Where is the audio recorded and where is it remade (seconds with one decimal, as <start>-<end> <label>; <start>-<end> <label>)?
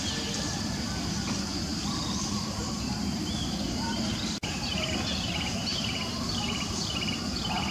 0.0-1.7 recorded; 1.7-4.9 remade; 4.9-5.7 recorded; 5.7-7.1 remade; 7.1-7.7 recorded